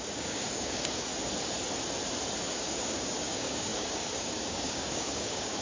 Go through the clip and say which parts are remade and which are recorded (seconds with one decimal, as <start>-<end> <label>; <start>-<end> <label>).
0.0-1.1 remade; 1.1-2.5 recorded; 2.5-5.6 remade